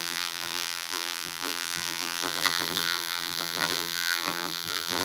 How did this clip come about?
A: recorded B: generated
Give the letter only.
B